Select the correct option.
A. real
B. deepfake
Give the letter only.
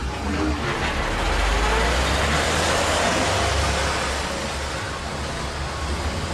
A